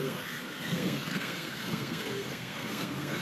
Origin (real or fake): fake